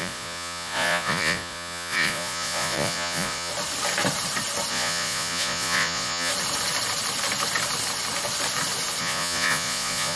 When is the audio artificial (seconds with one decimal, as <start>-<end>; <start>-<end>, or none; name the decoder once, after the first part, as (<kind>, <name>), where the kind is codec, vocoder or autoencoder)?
0.0-3.5 (vocoder, Vocos); 4.7-6.3; 9.0-10.2